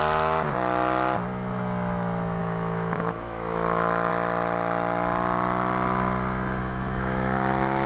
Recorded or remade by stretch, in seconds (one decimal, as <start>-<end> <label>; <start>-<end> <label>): 0.0-2.4 recorded; 2.4-4.1 remade; 4.1-6.6 recorded; 6.6-7.9 remade